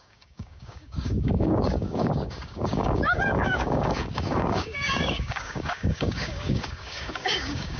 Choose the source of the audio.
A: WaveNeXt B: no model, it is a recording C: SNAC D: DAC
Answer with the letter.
D